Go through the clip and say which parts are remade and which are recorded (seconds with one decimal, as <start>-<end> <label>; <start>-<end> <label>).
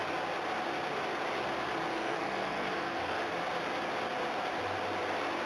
0.0-1.9 recorded; 1.9-3.2 remade; 3.2-5.5 recorded